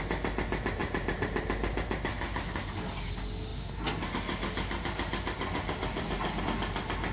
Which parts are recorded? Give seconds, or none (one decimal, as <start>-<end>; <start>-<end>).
0.0-7.1